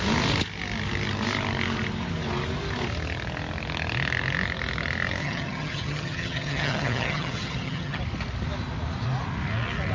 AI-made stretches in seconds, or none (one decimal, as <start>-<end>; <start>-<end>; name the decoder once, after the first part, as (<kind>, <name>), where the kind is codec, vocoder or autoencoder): 5.2-8.0 (vocoder, HiFi-GAN)